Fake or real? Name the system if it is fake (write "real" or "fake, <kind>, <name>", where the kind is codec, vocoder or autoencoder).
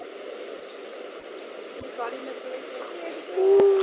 real